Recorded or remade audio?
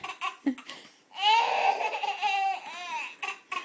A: recorded